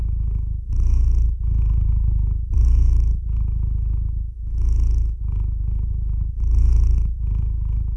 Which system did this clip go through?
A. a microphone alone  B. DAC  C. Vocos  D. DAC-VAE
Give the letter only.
D